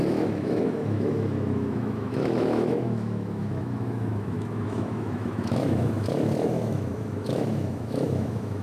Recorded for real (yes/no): no